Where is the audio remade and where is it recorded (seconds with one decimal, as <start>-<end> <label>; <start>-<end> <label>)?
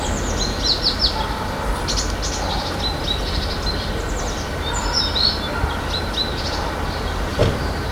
0.0-7.3 recorded; 7.3-7.9 remade